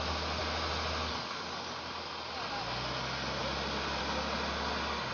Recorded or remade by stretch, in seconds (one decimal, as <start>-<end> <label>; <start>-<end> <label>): 0.0-5.1 recorded